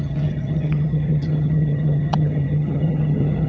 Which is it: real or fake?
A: fake